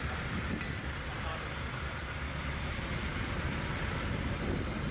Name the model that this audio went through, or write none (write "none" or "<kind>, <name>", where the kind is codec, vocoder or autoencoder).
none